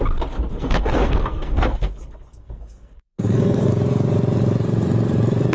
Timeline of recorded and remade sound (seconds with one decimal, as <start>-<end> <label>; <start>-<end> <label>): 0.0-0.5 recorded; 0.5-3.7 remade; 3.7-5.5 recorded